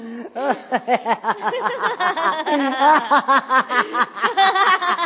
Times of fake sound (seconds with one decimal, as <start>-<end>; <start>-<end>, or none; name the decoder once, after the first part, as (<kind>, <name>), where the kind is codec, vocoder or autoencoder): none

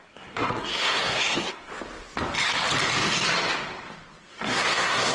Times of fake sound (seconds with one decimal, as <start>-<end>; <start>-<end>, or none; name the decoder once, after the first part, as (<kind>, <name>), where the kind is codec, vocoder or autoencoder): 0.0-1.7 (codec, SNAC); 4.3-5.1